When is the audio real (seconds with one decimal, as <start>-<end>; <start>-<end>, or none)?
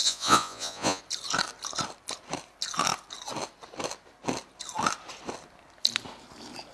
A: 1.0-6.7